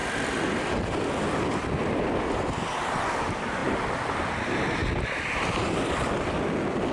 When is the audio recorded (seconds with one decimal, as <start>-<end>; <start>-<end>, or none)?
0.6-3.6; 4.3-4.8; 6.1-6.9

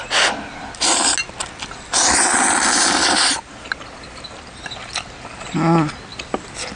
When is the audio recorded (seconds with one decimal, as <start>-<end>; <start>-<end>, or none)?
0.0-6.1

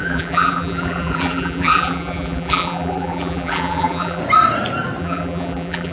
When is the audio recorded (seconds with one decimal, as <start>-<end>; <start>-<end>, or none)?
4.2-5.0

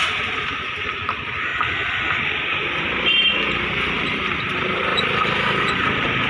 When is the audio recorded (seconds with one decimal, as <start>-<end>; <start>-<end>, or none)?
1.5-4.0